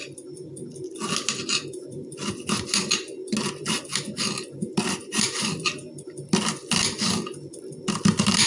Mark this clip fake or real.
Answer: real